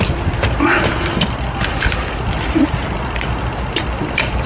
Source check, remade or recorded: recorded